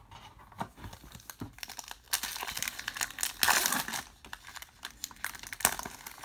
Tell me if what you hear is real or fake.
real